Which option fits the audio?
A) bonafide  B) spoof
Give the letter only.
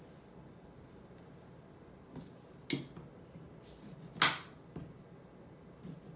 A